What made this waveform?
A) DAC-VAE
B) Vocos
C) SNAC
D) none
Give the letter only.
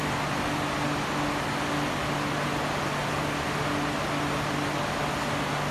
D